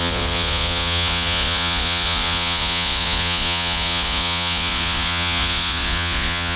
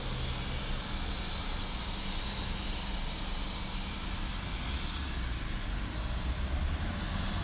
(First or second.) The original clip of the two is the second